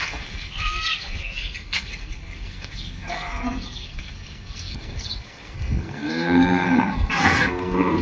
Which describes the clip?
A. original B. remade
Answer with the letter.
B